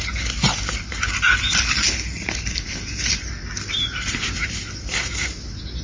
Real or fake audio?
real